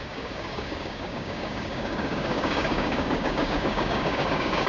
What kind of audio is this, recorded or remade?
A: remade